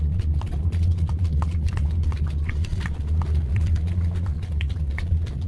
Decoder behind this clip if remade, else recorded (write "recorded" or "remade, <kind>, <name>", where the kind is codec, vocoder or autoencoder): remade, vocoder, Vocos